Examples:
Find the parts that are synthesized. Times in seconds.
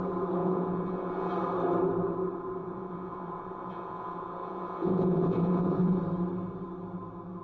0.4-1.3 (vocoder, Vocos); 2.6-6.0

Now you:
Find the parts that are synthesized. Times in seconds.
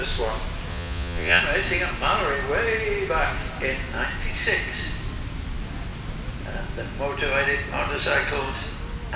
0.7-1.4 (vocoder, Vocos)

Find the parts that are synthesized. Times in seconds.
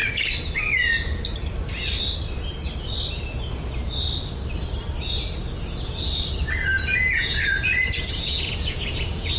6.8-9.4 (vocoder, Vocos)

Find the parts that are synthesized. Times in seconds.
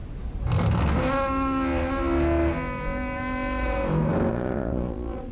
4.3-5.3 (vocoder, Vocos)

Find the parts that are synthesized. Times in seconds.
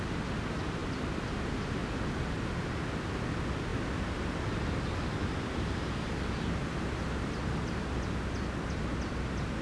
none